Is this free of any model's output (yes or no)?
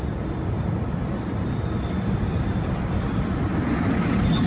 yes